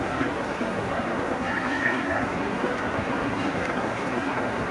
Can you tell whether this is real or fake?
fake